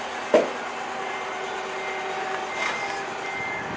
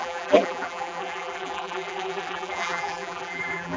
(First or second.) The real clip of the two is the first